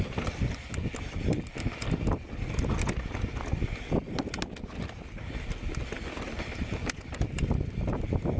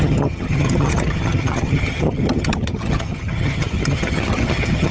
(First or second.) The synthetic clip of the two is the second